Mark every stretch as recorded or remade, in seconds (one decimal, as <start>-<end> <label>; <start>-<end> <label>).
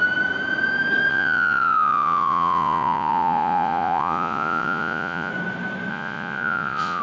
0.0-1.1 recorded; 1.1-5.3 remade; 5.3-5.9 recorded; 5.9-7.0 remade